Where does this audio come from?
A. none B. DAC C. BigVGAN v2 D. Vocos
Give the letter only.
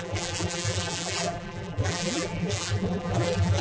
C